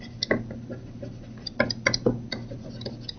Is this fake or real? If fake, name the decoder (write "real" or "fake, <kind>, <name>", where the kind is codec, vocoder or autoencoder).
real